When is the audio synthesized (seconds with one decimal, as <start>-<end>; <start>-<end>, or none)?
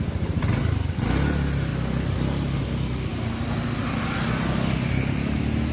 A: none